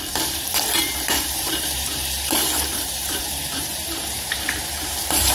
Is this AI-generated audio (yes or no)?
yes